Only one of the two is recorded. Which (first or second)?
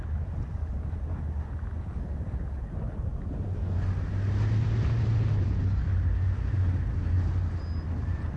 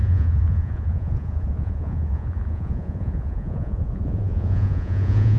first